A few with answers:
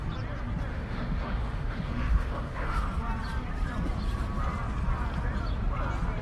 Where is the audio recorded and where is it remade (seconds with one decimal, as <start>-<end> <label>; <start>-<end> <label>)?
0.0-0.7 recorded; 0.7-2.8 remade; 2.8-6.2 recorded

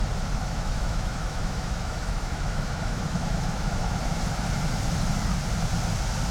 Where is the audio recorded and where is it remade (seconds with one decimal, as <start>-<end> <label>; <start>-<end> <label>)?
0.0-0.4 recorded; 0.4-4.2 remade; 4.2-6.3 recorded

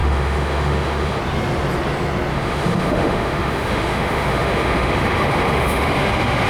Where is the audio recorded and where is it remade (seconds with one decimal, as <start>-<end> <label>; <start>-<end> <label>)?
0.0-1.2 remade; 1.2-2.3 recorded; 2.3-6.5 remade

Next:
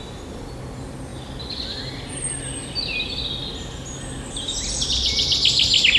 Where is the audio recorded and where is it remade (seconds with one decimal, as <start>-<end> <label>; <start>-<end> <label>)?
0.0-6.0 recorded

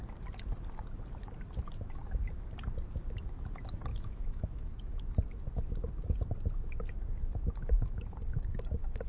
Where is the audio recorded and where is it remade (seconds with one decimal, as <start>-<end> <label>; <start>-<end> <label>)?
0.0-3.9 recorded; 3.9-5.0 remade; 5.0-9.1 recorded